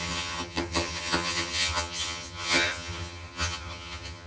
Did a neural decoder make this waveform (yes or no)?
yes